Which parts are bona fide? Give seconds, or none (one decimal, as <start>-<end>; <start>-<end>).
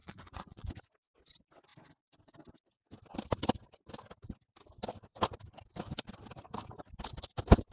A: 0.7-7.7